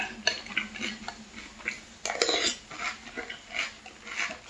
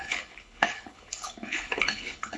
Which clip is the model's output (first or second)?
second